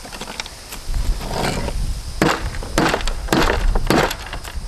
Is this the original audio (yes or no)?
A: yes